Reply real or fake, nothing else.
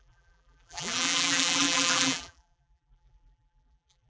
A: fake